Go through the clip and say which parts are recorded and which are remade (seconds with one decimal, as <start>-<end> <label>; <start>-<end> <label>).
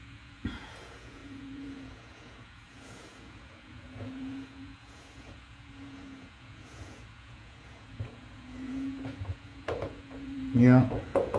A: 0.0-11.4 remade